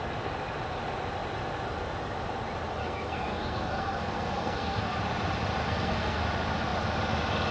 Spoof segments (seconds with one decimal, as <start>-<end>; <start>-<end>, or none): 2.8-5.0; 5.6-6.2